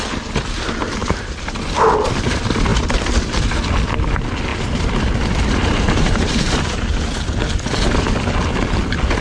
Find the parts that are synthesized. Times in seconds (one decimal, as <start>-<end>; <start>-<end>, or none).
1.0-1.7; 4.5-7.0